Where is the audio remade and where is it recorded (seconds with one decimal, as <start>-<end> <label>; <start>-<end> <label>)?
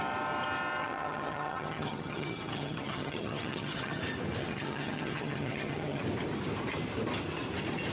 0.0-0.8 recorded; 0.8-4.0 remade; 4.0-4.4 recorded; 4.4-6.0 remade; 6.0-7.9 recorded